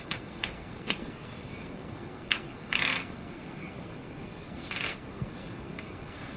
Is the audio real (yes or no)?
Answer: no